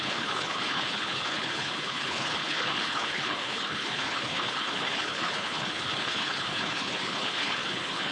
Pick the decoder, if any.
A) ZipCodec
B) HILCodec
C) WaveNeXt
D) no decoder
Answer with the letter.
B